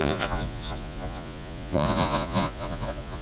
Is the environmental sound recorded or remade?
remade